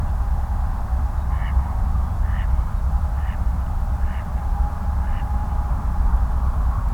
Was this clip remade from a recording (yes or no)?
yes